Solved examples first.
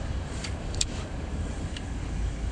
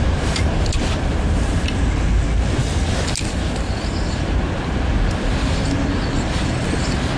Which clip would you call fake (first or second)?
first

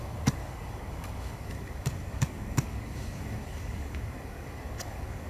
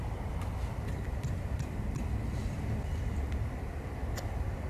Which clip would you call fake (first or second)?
first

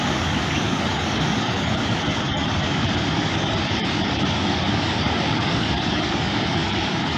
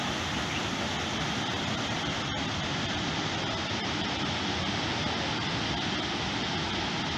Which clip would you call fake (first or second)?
first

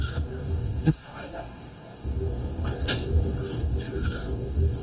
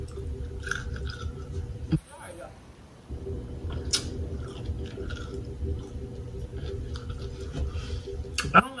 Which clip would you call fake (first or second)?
first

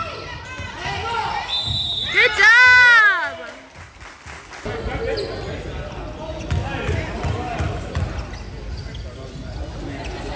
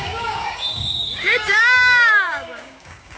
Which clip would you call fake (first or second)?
second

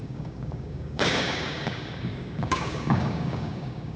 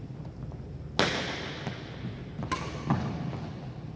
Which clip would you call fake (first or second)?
first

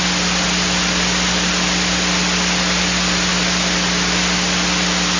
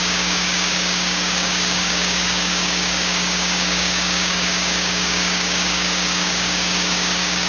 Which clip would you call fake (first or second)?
second